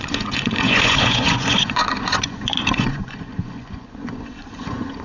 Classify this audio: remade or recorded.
remade